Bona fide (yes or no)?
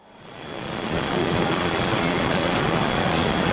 no